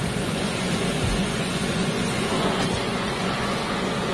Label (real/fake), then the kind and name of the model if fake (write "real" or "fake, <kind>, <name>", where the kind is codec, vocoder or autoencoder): fake, vocoder, Vocos